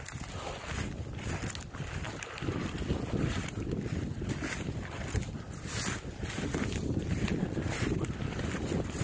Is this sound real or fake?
real